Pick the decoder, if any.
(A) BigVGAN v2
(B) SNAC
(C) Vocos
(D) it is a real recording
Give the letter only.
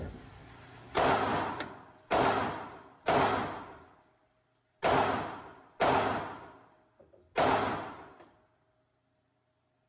D